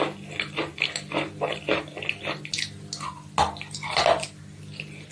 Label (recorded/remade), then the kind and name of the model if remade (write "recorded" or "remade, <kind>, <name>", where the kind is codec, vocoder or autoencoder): recorded